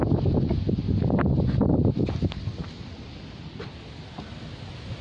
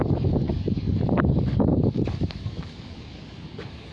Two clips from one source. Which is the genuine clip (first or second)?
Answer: first